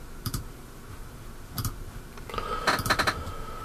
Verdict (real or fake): real